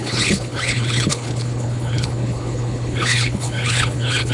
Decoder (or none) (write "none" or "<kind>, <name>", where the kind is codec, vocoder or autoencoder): codec, HILCodec